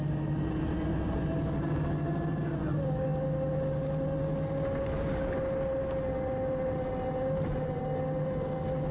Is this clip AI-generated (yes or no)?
no